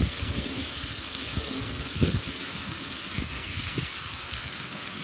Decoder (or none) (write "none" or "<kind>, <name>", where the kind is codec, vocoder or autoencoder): codec, SNAC